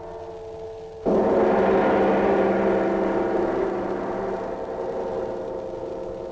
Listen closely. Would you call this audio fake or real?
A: real